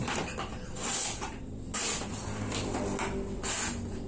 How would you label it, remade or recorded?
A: recorded